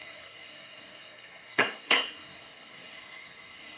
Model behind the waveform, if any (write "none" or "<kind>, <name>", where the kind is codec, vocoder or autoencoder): codec, SNAC